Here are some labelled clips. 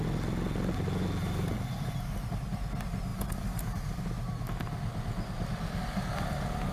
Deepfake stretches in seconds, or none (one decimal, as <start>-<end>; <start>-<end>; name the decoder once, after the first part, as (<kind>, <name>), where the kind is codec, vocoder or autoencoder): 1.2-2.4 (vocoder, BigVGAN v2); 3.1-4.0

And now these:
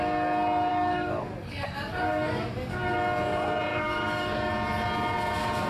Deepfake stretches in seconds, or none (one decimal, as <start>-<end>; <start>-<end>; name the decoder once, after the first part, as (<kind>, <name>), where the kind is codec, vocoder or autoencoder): 0.7-2.5 (codec, DAC); 3.7-4.5

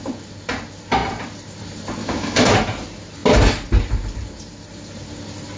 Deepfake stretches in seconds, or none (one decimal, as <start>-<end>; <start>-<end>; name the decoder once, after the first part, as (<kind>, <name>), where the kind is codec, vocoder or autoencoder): 2.0-2.5 (autoencoder, DAC-VAE)